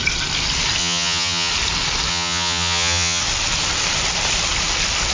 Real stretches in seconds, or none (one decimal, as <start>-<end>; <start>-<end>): 0.0-0.8; 1.5-2.1; 3.2-5.1